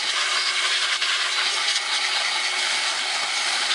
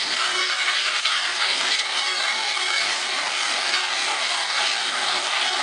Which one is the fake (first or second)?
second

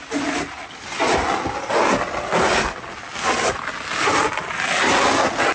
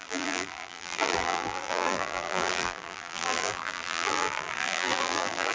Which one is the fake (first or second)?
second